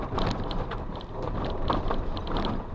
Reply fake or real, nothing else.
real